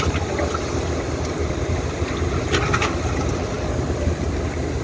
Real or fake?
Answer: real